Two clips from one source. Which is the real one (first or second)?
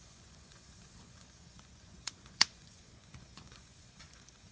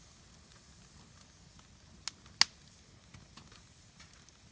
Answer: second